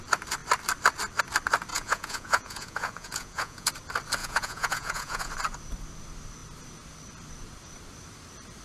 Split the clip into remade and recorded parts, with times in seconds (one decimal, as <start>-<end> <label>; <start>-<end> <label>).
0.0-1.7 recorded; 1.7-3.7 remade; 3.7-4.2 recorded; 4.2-5.3 remade; 5.3-8.6 recorded